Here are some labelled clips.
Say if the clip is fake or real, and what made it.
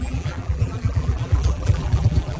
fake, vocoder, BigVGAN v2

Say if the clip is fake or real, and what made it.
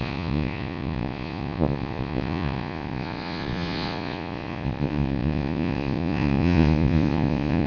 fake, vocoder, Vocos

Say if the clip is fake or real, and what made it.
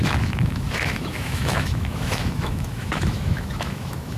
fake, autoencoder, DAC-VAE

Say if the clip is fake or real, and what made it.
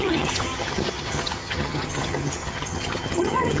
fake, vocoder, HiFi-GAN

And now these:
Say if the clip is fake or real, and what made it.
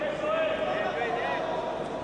real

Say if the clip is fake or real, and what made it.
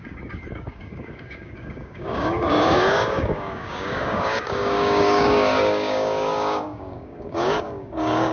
fake, codec, DAC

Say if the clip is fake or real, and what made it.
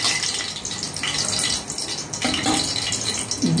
real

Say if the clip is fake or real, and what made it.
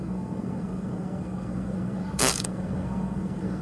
fake, codec, SNAC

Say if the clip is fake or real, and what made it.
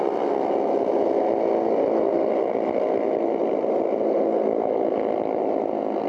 real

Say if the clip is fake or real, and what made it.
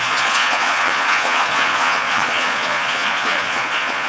fake, vocoder, Vocos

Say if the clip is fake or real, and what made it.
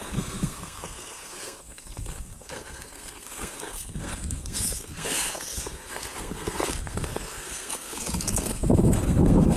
fake, codec, SNAC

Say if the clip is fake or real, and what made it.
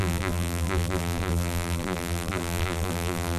fake, vocoder, BigVGAN v2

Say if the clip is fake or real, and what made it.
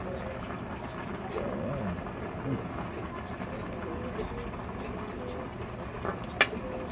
real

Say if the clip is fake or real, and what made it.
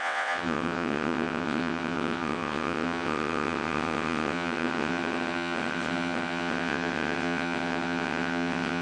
fake, vocoder, WaveNeXt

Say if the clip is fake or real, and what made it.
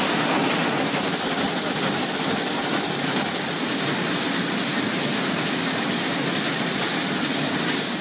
real